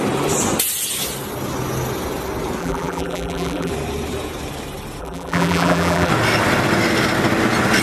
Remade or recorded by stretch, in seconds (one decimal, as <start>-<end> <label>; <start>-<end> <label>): 0.0-2.6 recorded; 2.6-3.7 remade; 3.7-5.0 recorded; 5.0-6.1 remade; 6.1-7.8 recorded